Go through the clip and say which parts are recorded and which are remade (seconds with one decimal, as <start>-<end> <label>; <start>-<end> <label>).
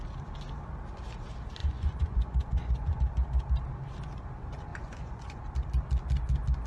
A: 0.0-1.6 recorded; 1.6-3.0 remade; 3.0-4.7 recorded; 4.7-5.4 remade; 5.4-6.7 recorded